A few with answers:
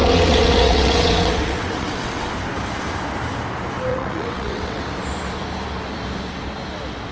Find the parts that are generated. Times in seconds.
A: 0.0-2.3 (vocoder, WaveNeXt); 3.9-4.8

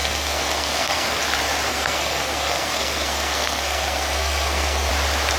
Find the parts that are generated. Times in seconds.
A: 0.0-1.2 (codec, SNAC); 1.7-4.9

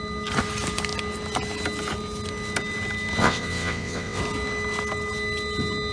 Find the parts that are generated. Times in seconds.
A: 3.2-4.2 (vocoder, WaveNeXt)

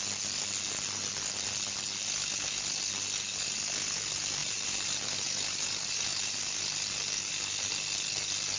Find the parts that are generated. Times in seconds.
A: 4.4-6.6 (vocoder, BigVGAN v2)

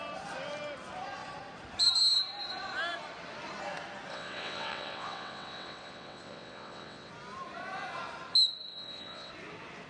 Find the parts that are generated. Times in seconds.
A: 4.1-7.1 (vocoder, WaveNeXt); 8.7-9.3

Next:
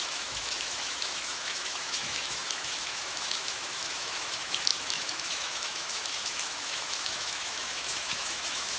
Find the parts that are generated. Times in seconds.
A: 0.0-8.8 (autoencoder, DAC-VAE)